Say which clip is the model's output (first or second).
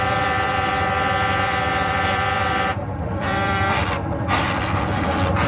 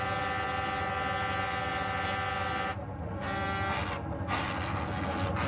first